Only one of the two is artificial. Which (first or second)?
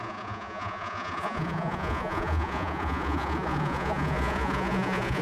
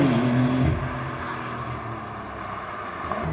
first